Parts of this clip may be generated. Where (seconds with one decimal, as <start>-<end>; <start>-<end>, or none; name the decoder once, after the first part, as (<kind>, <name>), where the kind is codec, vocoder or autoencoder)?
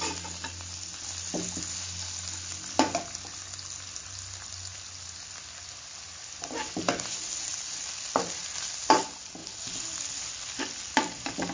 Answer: 7.5-8.4 (vocoder, BigVGAN v2)